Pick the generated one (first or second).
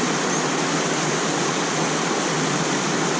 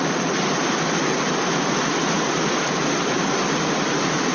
second